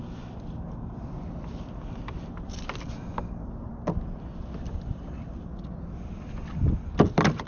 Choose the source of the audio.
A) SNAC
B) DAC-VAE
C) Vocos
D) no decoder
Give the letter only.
D